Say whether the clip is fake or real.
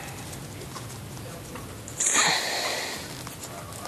real